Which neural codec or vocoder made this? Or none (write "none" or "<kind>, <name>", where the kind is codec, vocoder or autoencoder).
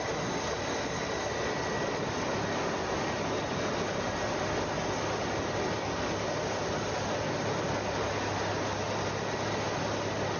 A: none